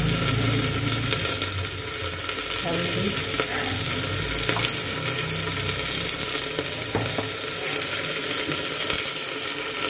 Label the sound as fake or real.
real